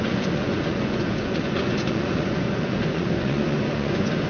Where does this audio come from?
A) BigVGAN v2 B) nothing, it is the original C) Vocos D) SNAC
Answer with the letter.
C